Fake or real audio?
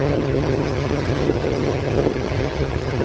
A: fake